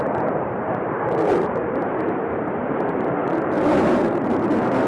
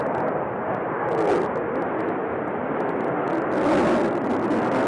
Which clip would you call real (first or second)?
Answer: second